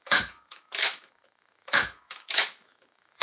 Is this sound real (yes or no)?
no